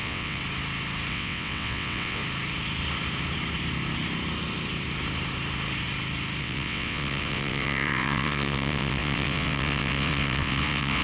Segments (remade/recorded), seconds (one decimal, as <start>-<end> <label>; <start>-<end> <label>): 0.0-0.4 remade; 0.4-1.1 recorded; 1.1-2.2 remade; 2.2-6.4 recorded; 6.4-11.0 remade